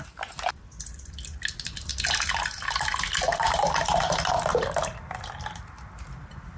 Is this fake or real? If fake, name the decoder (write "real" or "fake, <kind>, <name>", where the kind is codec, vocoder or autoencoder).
real